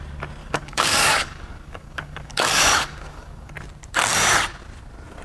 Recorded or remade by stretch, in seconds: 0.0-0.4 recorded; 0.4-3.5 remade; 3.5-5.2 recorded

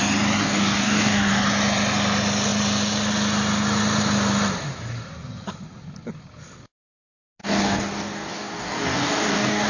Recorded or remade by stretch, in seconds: 0.0-0.4 recorded; 0.4-1.3 remade; 1.3-7.4 recorded; 7.4-9.7 remade

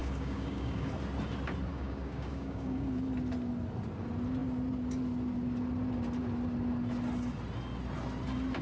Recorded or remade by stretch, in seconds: 0.0-0.9 remade; 0.9-1.7 recorded; 1.7-2.9 remade; 2.9-8.6 recorded